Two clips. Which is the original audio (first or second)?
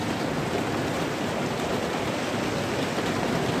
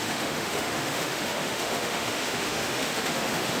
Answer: first